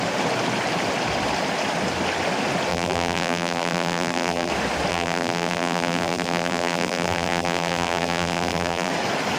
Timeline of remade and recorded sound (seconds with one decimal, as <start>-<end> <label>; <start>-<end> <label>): 0.0-2.7 recorded; 2.7-4.5 remade; 4.5-4.9 recorded; 4.9-8.9 remade; 8.9-9.4 recorded